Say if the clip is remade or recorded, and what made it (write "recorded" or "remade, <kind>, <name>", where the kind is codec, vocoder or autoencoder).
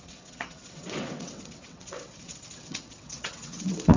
remade, vocoder, WaveNeXt